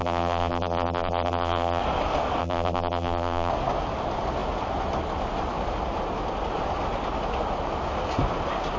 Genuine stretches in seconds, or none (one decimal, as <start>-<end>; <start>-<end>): 1.8-2.4; 3.5-8.8

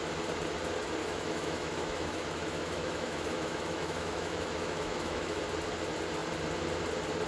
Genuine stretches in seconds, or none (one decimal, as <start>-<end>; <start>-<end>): 0.0-1.0; 5.4-7.3

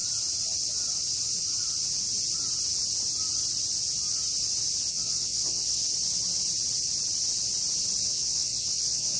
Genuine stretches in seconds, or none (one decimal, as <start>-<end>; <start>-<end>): 0.0-4.9; 5.8-8.1